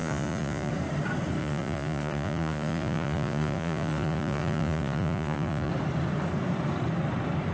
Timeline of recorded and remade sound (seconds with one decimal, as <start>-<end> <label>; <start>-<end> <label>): 0.0-0.7 remade; 0.7-1.4 recorded; 1.4-5.7 remade; 5.7-7.5 recorded